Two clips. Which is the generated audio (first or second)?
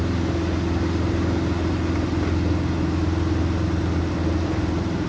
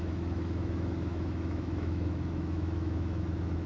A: second